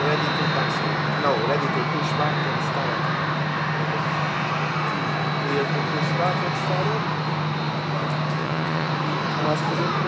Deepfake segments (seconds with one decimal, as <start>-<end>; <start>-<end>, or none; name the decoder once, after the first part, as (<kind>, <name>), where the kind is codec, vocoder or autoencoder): 8.4-8.9 (vocoder, WaveNeXt)